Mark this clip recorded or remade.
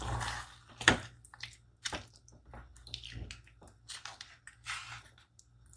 recorded